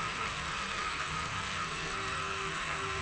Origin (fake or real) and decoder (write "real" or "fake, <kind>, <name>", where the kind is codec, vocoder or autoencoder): fake, codec, SNAC